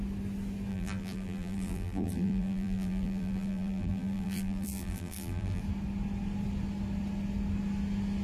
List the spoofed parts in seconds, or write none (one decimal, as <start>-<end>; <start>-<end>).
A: 0.7-5.6